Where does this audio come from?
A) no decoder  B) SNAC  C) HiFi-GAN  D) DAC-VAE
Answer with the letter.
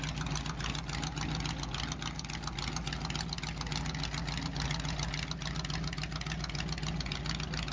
A